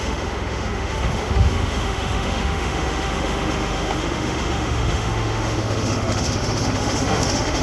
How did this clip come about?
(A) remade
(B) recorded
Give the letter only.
A